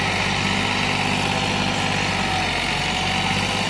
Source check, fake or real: real